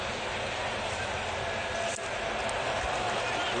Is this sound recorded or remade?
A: recorded